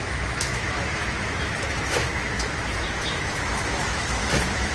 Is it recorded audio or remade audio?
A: remade